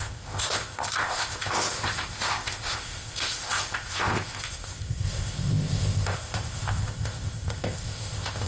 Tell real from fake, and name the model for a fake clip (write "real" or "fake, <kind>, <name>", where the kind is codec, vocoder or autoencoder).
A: fake, codec, ZipCodec